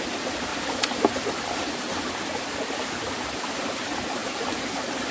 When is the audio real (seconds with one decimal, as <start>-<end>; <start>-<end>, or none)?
0.0-0.5; 2.4-5.1